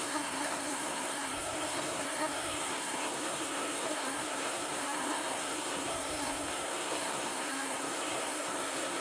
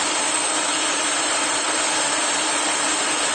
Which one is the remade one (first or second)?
first